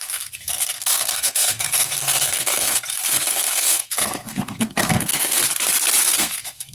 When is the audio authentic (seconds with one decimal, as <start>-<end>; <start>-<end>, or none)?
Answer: 5.4-6.0